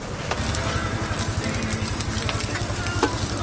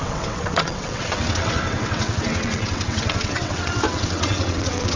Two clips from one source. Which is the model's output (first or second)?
second